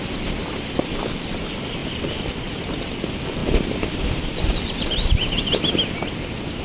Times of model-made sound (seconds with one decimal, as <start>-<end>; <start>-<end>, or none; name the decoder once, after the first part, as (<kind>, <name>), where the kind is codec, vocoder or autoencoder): 1.8-2.6 (vocoder, BigVGAN v2); 3.4-5.7